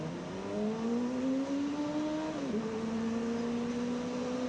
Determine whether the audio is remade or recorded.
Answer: recorded